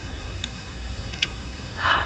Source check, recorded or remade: remade